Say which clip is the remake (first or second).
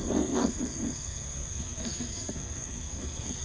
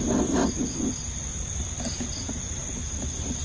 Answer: first